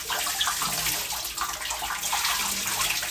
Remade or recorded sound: recorded